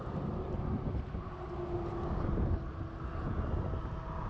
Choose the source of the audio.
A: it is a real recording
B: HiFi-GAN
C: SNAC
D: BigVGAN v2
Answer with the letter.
A